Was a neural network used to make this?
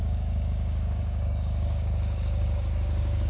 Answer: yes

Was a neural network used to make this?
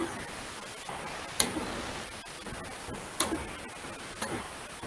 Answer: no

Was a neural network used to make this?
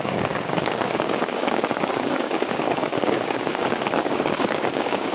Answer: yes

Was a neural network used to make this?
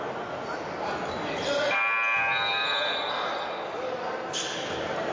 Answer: no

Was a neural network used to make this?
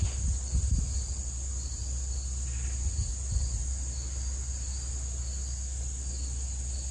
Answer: no